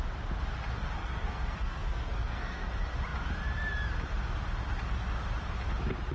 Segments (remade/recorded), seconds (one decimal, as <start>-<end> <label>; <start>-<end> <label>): 0.0-1.0 recorded; 1.0-2.7 remade; 2.7-6.1 recorded